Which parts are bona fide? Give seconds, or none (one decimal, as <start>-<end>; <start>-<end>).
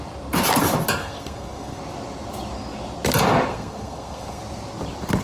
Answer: 0.0-1.0; 1.8-3.5; 4.4-5.2